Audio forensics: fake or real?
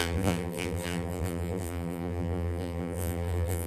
fake